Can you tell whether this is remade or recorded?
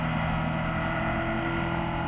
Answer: recorded